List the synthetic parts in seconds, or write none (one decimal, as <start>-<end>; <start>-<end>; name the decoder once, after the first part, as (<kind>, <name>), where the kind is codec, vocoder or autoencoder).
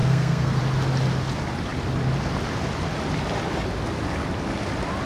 0.0-0.6 (codec, SNAC)